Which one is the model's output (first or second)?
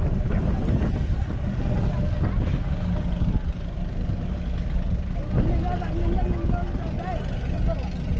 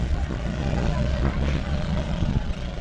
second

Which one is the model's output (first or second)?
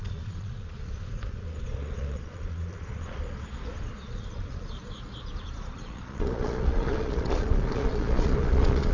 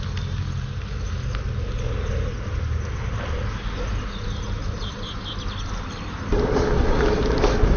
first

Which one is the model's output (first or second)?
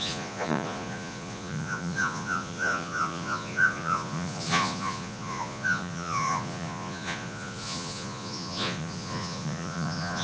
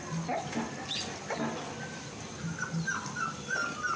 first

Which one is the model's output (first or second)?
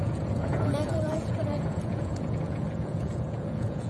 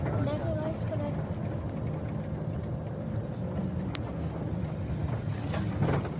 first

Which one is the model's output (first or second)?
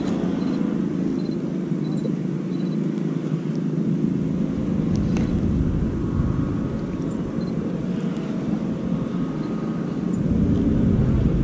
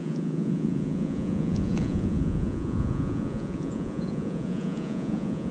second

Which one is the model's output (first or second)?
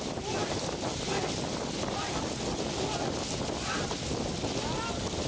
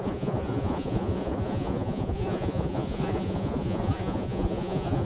second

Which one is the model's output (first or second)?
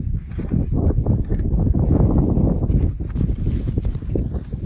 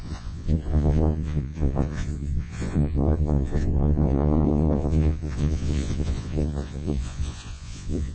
second